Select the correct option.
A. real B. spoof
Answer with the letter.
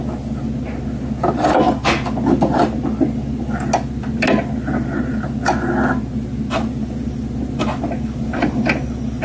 A